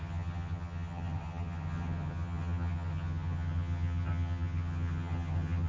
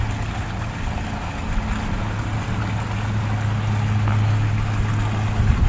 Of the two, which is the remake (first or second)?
first